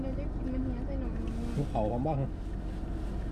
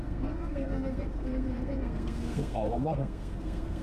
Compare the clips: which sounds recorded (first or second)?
first